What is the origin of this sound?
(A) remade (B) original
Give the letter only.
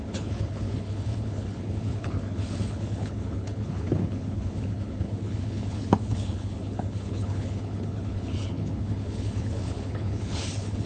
A